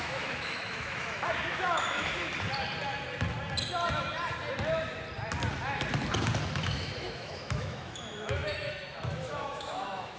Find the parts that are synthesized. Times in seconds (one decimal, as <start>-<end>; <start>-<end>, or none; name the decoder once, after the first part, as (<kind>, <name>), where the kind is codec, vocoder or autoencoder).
0.0-2.3 (autoencoder, DAC-VAE); 6.5-10.2